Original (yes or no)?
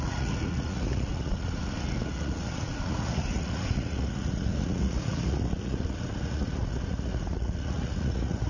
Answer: no